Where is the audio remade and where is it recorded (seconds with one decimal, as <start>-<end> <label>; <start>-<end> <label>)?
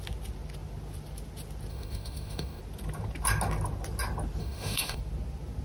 0.0-1.7 recorded; 1.7-2.6 remade; 2.6-4.4 recorded; 4.4-5.0 remade; 5.0-5.6 recorded